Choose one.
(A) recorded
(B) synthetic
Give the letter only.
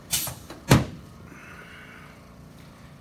B